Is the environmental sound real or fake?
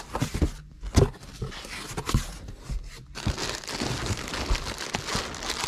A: real